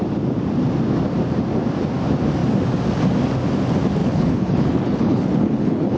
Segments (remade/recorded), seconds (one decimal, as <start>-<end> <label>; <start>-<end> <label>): 0.0-4.0 recorded; 4.0-6.0 remade